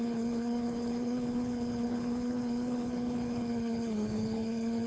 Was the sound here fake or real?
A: fake